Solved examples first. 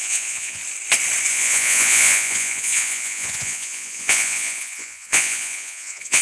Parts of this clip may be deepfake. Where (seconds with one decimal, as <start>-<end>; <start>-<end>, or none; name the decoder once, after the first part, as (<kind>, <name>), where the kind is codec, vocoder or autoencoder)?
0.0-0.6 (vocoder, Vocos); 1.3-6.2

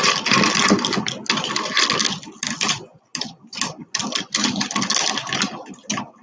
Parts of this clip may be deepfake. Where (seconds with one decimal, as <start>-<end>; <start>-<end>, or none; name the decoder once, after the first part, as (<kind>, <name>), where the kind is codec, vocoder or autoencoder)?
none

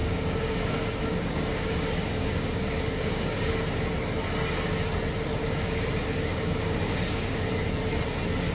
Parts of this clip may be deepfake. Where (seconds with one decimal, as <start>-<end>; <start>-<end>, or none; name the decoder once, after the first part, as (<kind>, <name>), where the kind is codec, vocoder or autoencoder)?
0.0-3.5 (codec, DAC); 5.4-7.5

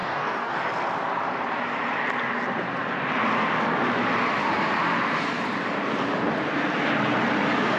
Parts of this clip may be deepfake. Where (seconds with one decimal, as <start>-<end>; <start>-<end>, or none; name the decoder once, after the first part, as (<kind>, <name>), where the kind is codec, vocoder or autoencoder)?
0.0-0.5 (codec, DAC)